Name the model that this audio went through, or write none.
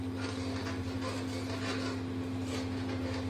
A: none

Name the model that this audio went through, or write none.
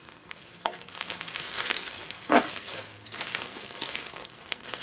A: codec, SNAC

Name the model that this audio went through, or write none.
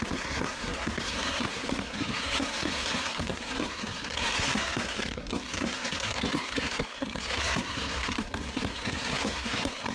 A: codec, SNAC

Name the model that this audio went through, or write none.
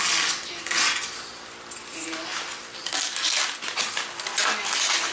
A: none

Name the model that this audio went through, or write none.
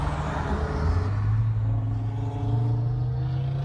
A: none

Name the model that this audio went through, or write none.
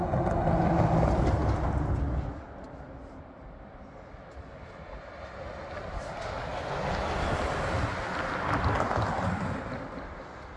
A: none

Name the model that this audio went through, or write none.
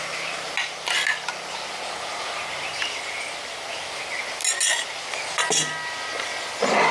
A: none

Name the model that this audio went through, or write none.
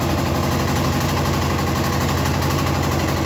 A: none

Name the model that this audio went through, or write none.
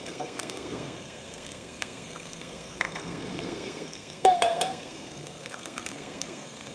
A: codec, SNAC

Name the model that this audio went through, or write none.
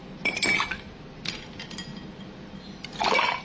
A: none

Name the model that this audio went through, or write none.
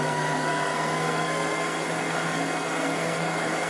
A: codec, SNAC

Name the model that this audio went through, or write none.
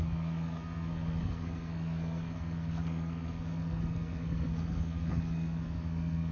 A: codec, SNAC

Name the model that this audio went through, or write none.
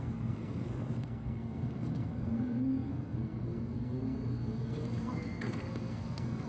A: codec, SNAC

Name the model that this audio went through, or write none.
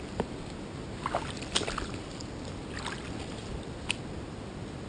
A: none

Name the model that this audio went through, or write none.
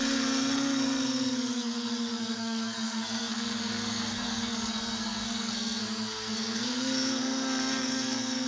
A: codec, SNAC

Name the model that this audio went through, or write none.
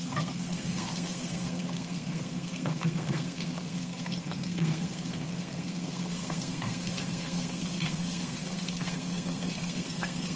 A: codec, SNAC